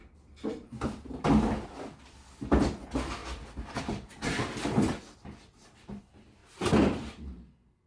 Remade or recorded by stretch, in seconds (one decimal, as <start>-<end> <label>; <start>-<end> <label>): 0.0-7.9 recorded